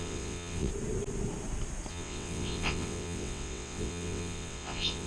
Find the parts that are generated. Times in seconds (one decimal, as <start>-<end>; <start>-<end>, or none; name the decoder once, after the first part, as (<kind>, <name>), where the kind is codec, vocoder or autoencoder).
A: 0.0-0.7 (vocoder, WaveNeXt); 1.9-5.1